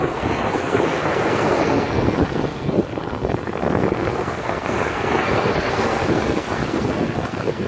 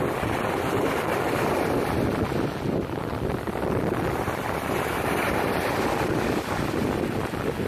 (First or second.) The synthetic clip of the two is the first